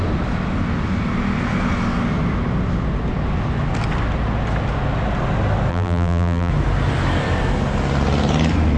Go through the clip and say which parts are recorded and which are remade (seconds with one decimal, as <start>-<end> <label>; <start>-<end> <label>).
0.0-5.7 recorded; 5.7-6.5 remade; 6.5-8.8 recorded